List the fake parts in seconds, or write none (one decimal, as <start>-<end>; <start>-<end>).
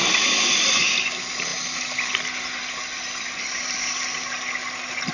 none